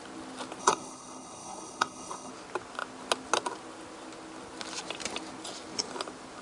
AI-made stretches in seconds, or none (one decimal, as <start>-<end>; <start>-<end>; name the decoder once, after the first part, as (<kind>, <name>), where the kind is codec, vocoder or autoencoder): 0.6-2.3 (codec, HILCodec)